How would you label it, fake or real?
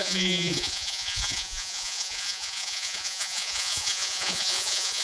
fake